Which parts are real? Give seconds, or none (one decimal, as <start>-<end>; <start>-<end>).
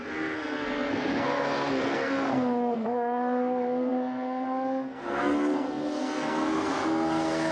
none